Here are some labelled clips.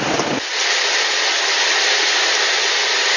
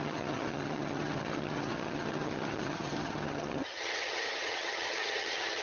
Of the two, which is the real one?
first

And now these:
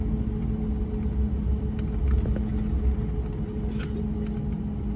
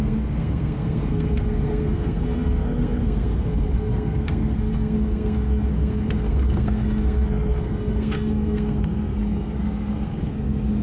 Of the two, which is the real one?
first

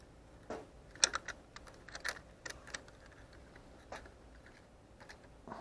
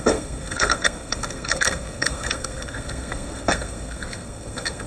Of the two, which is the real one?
first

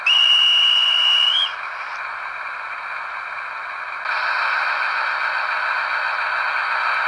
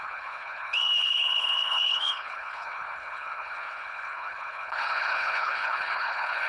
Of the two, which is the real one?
first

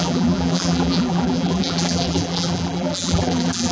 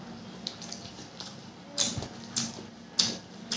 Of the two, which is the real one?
second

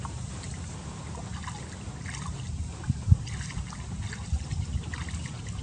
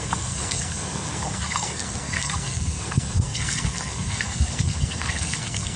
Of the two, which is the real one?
first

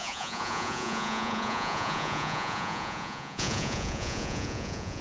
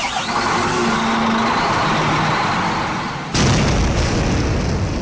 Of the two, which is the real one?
second